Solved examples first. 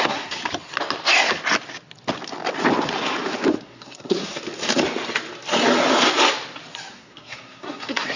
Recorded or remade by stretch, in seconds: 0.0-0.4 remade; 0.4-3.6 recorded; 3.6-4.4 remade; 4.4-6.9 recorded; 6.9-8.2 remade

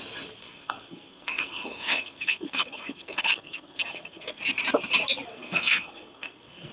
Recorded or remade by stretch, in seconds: 0.0-0.4 recorded; 0.4-4.4 remade; 4.4-5.3 recorded; 5.3-6.7 remade

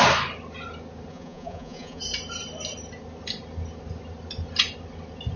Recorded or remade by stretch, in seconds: 0.0-1.1 recorded; 1.1-2.0 remade; 2.0-5.4 recorded

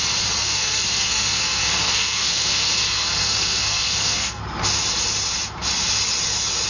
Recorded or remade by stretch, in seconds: 0.0-0.4 recorded; 0.4-4.4 remade; 4.4-6.7 recorded